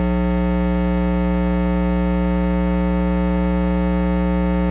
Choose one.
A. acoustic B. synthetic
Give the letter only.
A